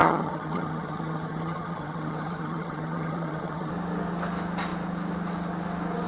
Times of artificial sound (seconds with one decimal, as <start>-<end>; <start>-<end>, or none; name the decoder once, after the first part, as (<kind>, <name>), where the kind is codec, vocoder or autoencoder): 0.0-3.7 (vocoder, HiFi-GAN)